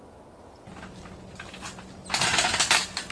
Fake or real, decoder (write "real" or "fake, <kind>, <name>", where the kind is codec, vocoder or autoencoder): real